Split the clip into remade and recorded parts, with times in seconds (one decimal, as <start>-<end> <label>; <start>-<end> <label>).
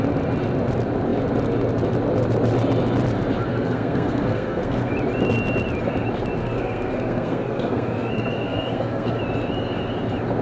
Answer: 0.0-3.5 recorded; 3.5-4.9 remade; 4.9-6.4 recorded; 6.4-9.2 remade; 9.2-10.4 recorded